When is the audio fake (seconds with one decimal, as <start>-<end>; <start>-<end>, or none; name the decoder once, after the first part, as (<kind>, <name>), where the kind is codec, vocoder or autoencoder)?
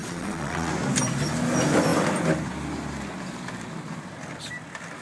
0.0-0.7 (vocoder, WaveNeXt)